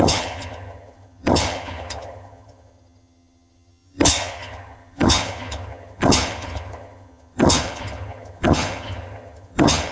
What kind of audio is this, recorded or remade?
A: remade